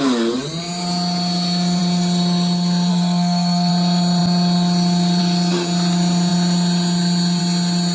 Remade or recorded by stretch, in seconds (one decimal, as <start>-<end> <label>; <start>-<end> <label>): 0.0-2.9 recorded; 2.9-3.7 remade; 3.7-7.9 recorded